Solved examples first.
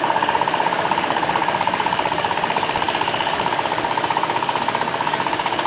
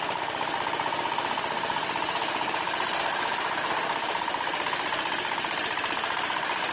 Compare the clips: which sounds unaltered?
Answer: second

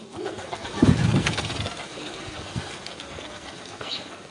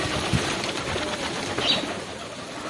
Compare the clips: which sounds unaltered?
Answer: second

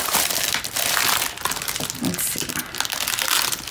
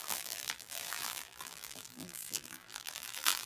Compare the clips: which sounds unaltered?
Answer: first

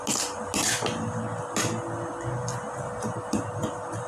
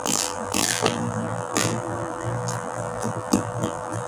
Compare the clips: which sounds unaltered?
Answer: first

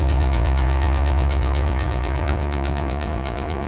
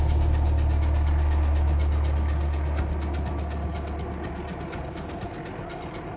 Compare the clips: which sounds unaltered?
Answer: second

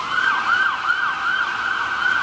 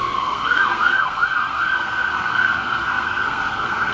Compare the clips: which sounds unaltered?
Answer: first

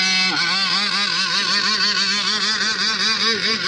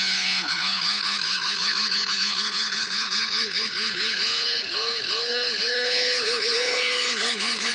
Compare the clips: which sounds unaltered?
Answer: first